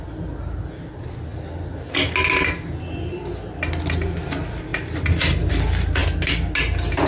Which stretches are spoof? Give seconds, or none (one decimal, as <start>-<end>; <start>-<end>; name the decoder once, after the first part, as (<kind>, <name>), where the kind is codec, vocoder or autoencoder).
none

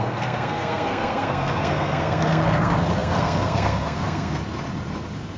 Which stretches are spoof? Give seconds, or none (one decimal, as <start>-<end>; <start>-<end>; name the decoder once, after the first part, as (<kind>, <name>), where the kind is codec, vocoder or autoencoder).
0.0-4.4 (codec, SNAC)

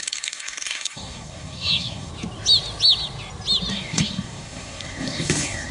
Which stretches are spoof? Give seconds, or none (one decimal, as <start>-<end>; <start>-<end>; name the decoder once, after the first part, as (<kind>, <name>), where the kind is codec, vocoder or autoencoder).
0.0-2.1 (codec, SNAC); 3.7-5.7

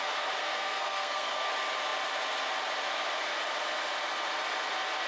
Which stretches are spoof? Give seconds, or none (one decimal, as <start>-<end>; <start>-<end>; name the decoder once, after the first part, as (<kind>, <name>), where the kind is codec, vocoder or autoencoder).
0.4-1.5 (codec, SNAC)

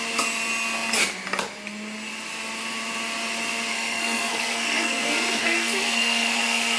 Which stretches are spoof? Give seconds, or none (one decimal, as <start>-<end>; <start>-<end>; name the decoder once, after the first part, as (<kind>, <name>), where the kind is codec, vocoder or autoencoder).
3.7-6.8 (codec, SNAC)

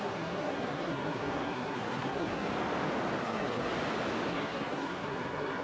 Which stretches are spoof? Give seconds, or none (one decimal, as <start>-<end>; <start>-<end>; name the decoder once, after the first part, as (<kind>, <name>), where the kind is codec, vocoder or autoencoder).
0.0-2.5 (codec, SNAC); 3.2-3.7; 4.3-5.6

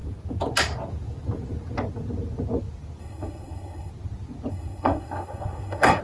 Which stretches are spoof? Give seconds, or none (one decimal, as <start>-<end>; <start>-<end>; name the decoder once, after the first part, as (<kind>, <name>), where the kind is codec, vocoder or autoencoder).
3.0-3.9 (codec, SNAC); 4.5-6.0